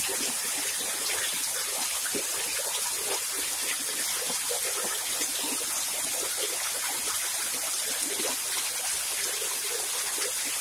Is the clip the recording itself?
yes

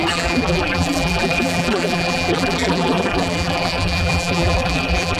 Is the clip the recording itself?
no